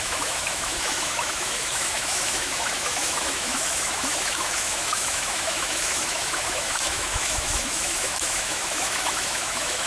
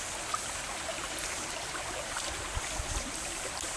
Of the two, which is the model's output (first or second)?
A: first